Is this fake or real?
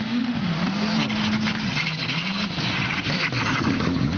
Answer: real